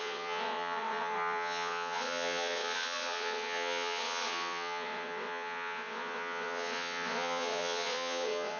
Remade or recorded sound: remade